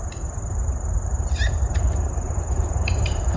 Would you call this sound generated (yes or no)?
yes